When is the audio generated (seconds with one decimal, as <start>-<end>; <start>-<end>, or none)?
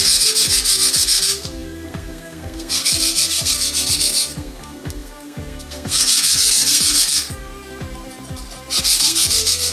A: 0.0-7.5; 8.8-9.7